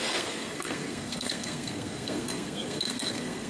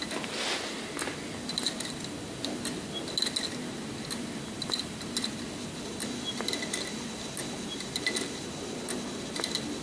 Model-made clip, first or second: first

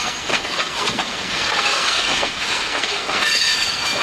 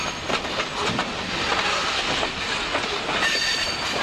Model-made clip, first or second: first